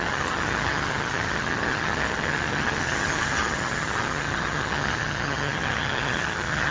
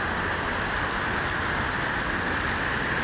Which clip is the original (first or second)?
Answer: second